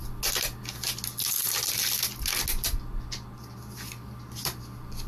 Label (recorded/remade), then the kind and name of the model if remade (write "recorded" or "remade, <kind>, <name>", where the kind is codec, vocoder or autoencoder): recorded